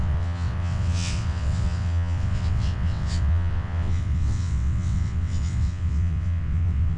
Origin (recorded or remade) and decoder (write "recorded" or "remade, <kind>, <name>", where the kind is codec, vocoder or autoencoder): remade, vocoder, WaveNeXt